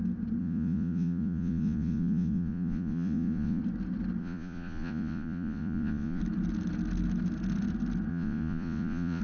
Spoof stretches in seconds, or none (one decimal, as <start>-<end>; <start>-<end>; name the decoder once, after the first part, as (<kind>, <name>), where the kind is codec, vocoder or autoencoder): 0.4-3.6 (vocoder, Vocos); 4.2-6.2; 8.1-9.2